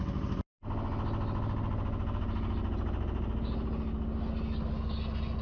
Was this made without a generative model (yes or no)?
yes